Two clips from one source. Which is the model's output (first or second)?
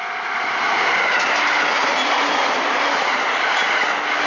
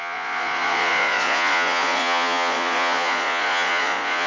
second